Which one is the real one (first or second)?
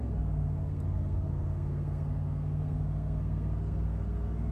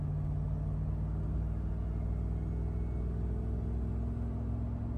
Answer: second